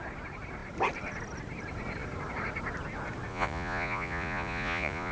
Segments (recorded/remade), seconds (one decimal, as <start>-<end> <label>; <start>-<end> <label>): 0.0-3.3 recorded; 3.3-5.1 remade